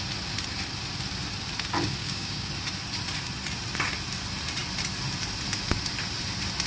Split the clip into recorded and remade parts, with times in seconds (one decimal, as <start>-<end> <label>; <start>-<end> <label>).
0.0-2.0 recorded; 2.0-2.5 remade; 2.5-6.7 recorded